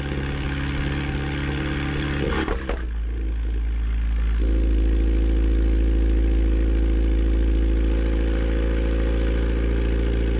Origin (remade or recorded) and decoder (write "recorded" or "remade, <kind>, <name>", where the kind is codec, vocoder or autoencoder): recorded